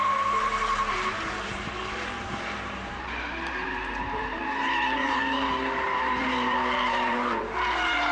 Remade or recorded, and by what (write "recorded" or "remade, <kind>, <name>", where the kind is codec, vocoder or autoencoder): remade, vocoder, BigVGAN v2